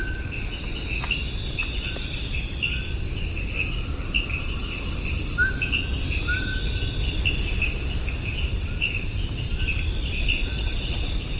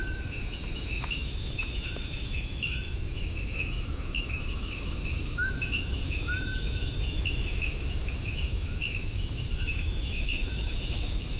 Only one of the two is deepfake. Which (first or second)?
second